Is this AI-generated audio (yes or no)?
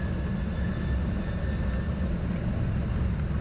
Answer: no